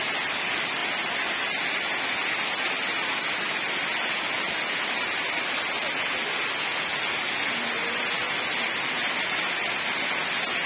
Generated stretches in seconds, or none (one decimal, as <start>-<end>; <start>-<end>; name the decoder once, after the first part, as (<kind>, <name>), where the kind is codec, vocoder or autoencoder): none